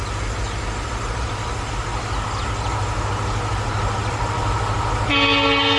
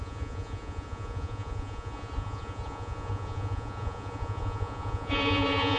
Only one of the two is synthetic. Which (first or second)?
second